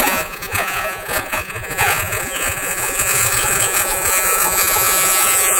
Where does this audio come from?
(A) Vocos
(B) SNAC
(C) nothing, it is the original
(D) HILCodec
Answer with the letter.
A